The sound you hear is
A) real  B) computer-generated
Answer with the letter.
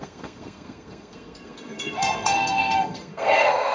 B